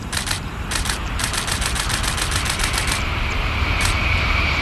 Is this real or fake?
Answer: fake